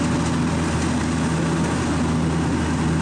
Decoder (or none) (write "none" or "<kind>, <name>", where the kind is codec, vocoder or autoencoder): none